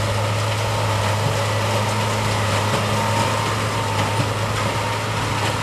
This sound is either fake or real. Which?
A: real